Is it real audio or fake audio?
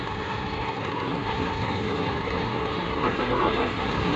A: fake